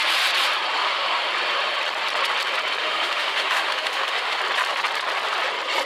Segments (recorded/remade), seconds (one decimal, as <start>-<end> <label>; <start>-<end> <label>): 0.0-0.8 recorded; 0.8-1.3 remade; 1.3-2.8 recorded; 2.8-4.4 remade; 4.4-5.9 recorded